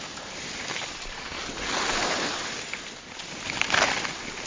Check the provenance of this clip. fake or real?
real